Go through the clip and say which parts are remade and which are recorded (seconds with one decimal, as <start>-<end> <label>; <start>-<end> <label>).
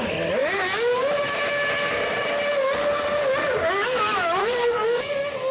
0.0-4.4 recorded; 4.4-5.0 remade; 5.0-5.5 recorded